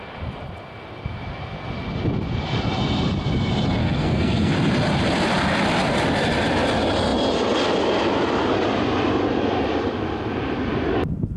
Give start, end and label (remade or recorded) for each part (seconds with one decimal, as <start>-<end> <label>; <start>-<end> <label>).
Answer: 0.0-3.8 recorded; 3.8-4.5 remade; 4.5-11.4 recorded